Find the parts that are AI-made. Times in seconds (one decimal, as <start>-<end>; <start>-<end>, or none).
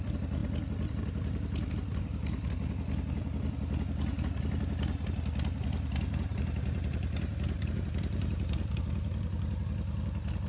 6.3-9.6